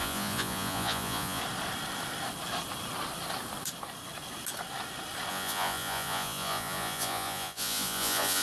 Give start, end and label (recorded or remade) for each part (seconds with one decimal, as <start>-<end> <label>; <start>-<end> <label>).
0.0-1.4 remade; 1.4-5.3 recorded; 5.3-8.4 remade

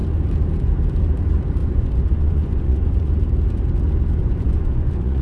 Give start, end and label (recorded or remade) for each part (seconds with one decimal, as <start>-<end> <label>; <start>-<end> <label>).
0.0-1.6 recorded; 1.6-3.1 remade; 3.1-4.2 recorded; 4.2-5.2 remade

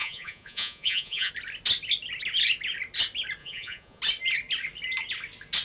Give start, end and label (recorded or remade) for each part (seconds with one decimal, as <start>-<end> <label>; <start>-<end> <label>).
0.0-1.3 remade; 1.3-3.4 recorded; 3.4-4.0 remade; 4.0-5.6 recorded

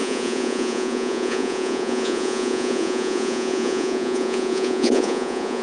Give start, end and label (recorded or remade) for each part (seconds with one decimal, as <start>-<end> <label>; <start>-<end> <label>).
0.0-5.6 remade

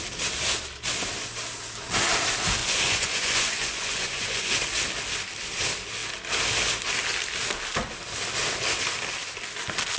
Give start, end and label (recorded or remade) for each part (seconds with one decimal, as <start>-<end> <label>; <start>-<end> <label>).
0.0-2.6 recorded; 2.6-4.5 remade; 4.5-10.0 recorded